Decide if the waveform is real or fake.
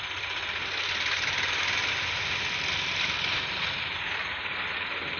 real